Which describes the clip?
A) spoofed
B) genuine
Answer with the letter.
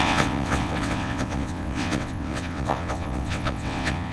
A